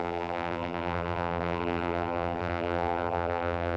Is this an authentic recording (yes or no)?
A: no